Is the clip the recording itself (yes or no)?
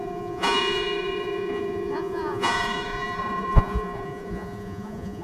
no